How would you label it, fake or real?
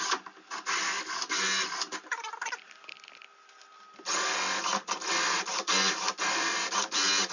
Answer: real